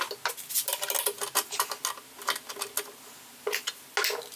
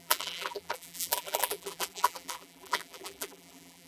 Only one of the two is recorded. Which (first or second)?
first